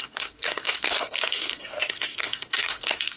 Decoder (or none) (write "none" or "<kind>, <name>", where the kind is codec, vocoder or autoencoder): codec, SNAC